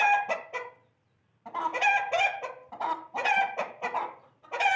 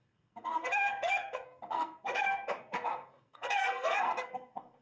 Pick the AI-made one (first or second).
second